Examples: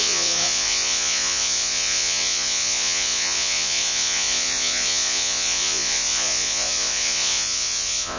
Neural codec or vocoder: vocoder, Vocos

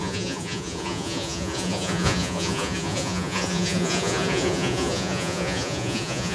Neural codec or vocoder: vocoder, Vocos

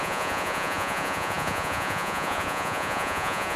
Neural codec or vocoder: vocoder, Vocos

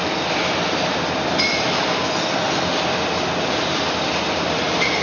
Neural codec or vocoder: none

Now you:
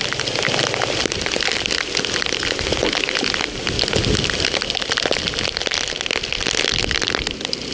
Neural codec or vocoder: none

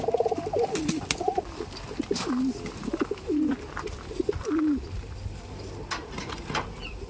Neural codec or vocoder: none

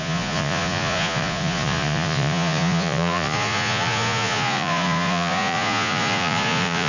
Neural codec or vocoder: vocoder, Vocos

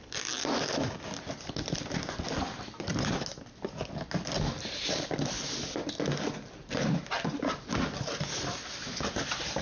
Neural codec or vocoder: none